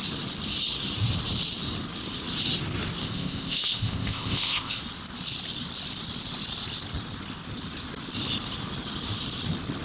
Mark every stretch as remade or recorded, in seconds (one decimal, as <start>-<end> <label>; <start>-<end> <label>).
0.0-3.0 recorded; 3.0-4.8 remade; 4.8-9.8 recorded